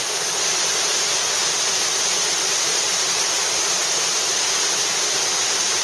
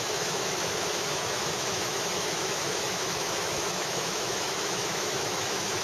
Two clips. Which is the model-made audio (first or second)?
second